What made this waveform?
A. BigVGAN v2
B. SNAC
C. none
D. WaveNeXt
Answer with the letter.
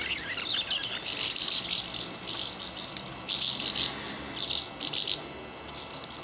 C